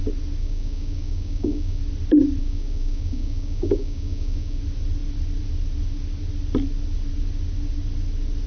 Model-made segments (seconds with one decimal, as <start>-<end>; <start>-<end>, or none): 0.4-1.8; 2.4-4.6